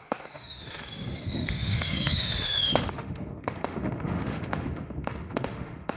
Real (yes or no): no